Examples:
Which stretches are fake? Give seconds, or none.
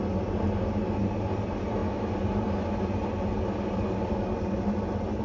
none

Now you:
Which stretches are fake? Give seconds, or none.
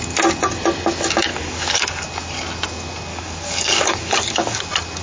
1.3-2.0 (codec, DAC); 3.1-4.6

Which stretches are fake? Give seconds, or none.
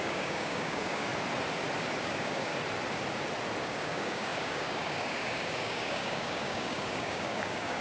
0.0-1.1 (codec, DAC); 2.0-2.5; 3.6-7.8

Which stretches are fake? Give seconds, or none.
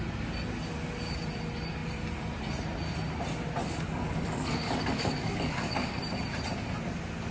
3.6-6.0 (codec, DAC)